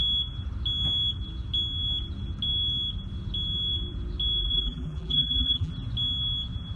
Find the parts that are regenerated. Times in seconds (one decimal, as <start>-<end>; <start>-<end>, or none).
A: 4.4-5.7